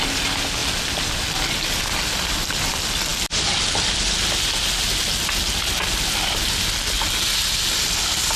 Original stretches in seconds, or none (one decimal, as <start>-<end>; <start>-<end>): 0.0-8.4